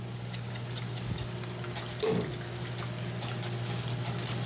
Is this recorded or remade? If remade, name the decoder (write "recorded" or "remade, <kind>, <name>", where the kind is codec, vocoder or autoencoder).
recorded